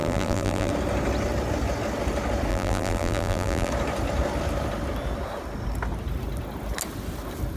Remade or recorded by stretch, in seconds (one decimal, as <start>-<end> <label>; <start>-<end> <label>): 0.0-0.7 remade; 0.7-2.5 recorded; 2.5-3.7 remade; 3.7-7.6 recorded